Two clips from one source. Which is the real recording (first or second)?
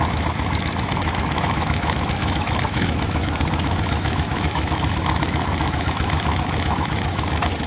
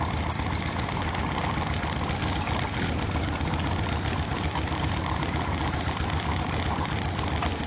second